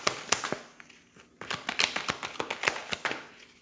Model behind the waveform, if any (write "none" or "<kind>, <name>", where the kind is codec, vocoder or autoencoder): none